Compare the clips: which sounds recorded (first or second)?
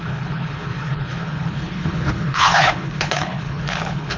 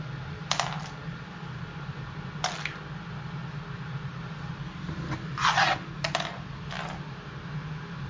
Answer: second